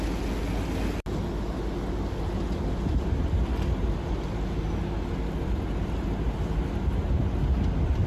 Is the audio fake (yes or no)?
no